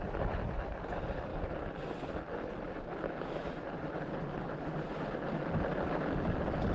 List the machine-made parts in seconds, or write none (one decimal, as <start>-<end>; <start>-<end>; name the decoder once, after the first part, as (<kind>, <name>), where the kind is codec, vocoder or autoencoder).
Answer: none